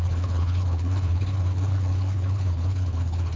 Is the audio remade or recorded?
remade